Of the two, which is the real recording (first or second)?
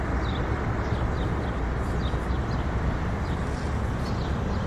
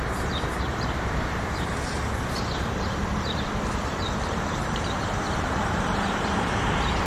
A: first